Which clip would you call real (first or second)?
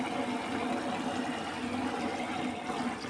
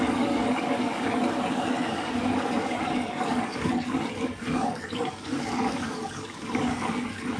first